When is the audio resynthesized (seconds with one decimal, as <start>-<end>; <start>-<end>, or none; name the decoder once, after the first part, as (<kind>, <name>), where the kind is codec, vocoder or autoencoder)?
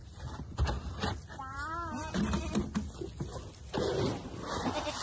0.0-2.1 (vocoder, BigVGAN v2)